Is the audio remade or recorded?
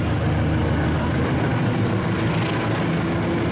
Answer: recorded